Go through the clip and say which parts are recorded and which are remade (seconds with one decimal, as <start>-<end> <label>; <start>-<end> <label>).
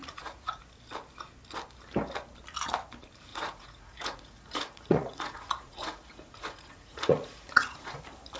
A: 0.0-0.6 remade; 0.6-3.3 recorded; 3.3-8.0 remade; 8.0-8.4 recorded